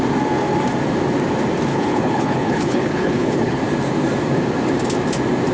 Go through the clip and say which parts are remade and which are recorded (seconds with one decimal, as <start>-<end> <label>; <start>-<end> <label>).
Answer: 0.0-1.7 recorded; 1.7-3.6 remade; 3.6-5.5 recorded